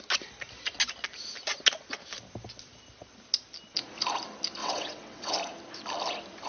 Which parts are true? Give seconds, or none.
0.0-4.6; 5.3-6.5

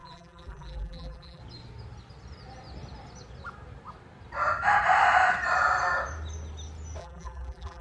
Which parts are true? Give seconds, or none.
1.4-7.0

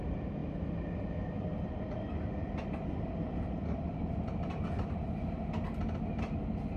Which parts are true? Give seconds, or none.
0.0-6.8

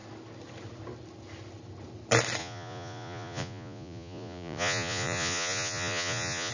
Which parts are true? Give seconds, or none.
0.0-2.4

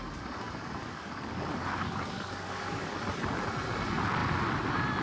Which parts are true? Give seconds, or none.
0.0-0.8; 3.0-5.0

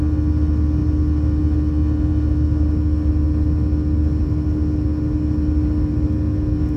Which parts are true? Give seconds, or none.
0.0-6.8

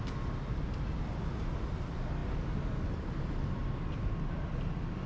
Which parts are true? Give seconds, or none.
0.0-5.1